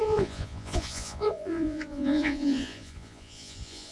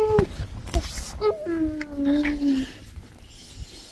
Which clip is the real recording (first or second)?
second